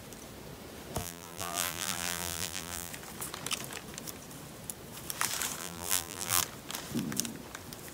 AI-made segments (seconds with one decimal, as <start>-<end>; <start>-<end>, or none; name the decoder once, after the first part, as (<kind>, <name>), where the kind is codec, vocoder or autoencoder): 1.0-2.9 (vocoder, BigVGAN v2); 5.6-6.4